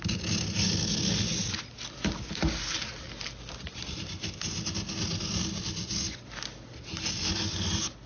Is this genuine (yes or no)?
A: yes